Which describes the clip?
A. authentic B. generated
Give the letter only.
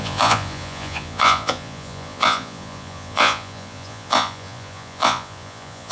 B